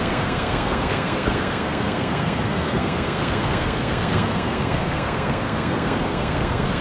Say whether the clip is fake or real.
fake